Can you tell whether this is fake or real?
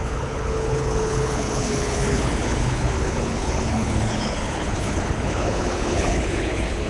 fake